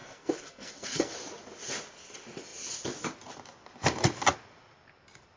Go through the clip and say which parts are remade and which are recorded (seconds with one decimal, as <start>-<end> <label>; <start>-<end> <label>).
0.0-1.1 remade; 1.1-5.4 recorded